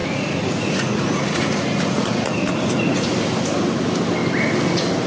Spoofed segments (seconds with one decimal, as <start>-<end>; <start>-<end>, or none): 0.0-3.1